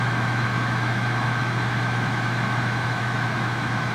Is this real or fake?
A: fake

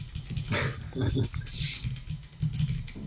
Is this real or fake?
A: real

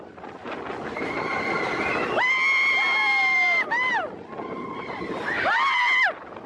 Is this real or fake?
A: real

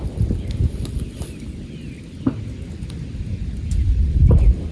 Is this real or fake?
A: real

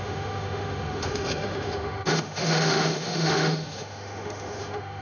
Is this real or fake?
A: fake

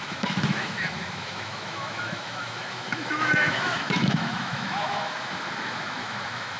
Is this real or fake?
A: fake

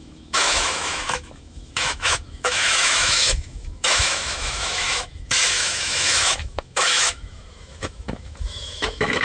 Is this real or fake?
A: fake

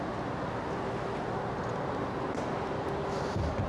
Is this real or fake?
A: real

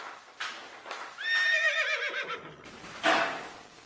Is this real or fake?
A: real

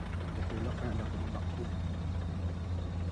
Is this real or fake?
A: real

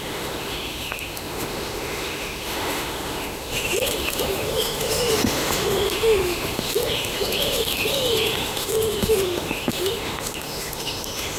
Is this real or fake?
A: fake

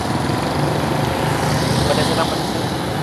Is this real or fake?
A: real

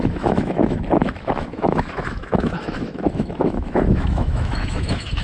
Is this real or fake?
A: fake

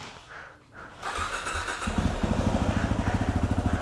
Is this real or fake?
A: real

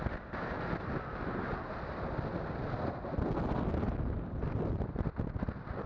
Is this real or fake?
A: real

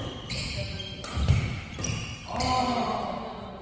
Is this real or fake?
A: real